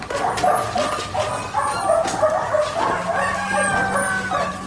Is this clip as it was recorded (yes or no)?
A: yes